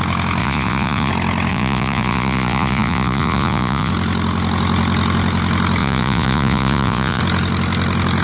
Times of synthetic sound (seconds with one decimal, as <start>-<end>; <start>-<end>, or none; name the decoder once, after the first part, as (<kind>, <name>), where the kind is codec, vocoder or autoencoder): 0.4-1.1 (vocoder, Vocos); 1.5-3.9; 5.8-7.2